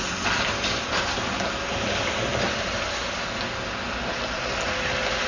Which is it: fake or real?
real